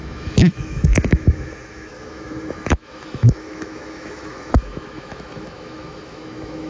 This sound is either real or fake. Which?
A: fake